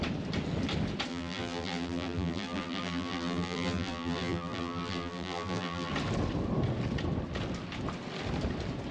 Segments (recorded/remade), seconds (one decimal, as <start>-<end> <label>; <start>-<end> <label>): 0.0-1.1 recorded; 1.1-5.9 remade; 5.9-8.9 recorded